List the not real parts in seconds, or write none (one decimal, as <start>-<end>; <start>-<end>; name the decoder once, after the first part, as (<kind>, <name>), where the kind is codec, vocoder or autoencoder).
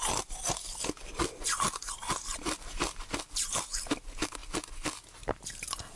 none